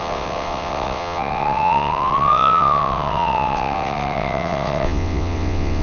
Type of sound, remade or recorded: remade